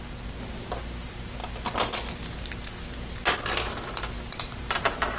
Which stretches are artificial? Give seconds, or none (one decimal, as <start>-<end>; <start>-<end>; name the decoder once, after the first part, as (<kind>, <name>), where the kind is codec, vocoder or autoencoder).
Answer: none